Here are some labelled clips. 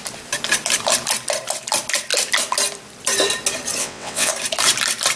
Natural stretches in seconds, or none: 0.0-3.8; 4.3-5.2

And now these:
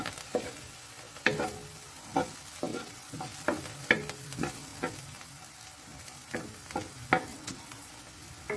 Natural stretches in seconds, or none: 0.0-2.7; 3.2-7.3; 7.9-8.6

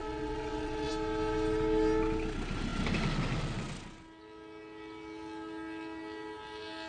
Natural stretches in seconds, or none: 0.9-6.9

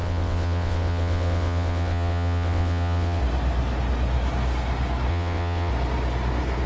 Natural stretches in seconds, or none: 3.2-5.1; 5.7-6.7

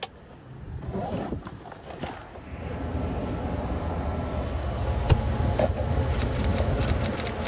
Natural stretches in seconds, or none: 0.0-7.5